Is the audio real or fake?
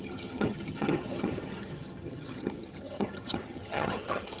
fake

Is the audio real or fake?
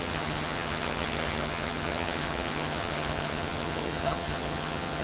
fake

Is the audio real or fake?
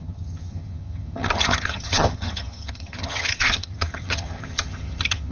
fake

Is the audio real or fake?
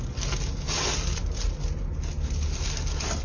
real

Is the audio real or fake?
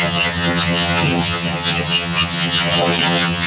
fake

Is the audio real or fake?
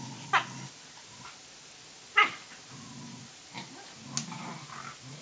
real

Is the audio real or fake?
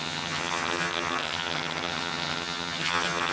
fake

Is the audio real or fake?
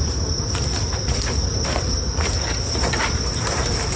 real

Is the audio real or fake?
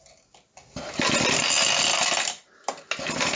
real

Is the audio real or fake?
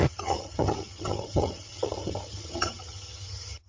fake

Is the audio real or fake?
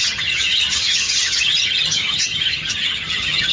fake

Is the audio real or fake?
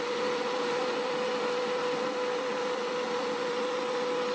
real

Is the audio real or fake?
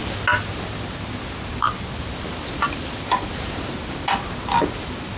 real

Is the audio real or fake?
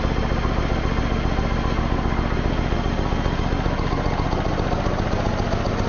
real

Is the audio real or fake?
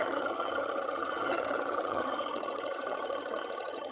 fake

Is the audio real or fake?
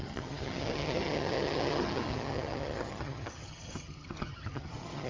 fake